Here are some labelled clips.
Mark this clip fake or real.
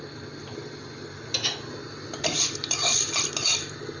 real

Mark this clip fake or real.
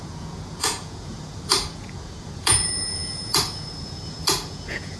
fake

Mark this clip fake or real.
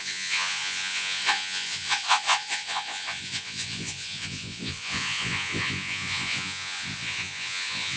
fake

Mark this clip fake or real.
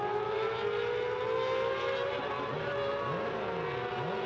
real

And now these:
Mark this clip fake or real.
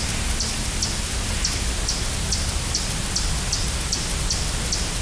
real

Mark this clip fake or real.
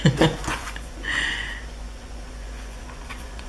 fake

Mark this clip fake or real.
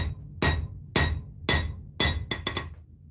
real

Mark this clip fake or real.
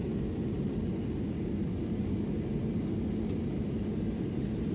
real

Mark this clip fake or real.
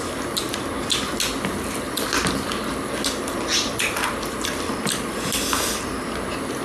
real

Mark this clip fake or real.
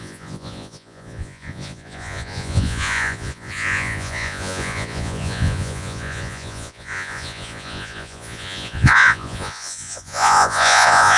fake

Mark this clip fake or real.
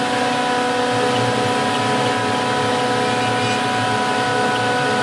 real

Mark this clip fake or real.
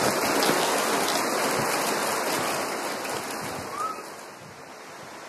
real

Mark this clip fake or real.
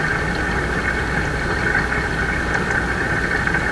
real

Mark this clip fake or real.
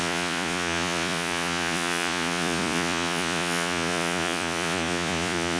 fake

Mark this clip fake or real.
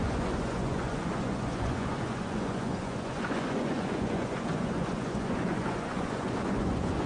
fake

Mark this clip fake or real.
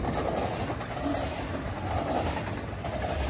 real